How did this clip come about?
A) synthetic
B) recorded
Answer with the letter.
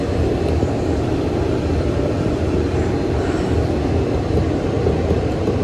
A